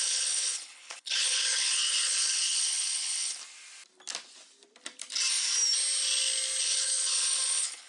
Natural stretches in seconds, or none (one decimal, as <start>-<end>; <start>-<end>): 3.4-6.6